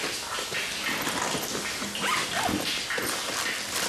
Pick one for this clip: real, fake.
real